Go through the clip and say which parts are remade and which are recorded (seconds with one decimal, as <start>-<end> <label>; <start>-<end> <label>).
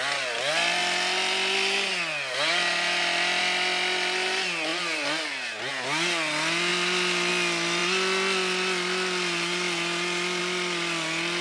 0.0-4.7 recorded; 4.7-5.3 remade; 5.3-11.4 recorded